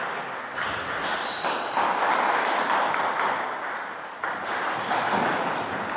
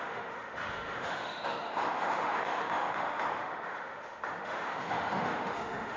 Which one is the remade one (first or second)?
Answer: second